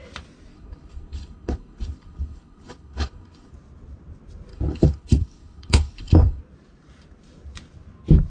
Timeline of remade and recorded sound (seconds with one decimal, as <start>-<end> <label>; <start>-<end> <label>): 0.0-0.5 recorded; 0.5-3.5 remade; 3.5-4.5 recorded; 4.5-6.4 remade; 6.4-8.3 recorded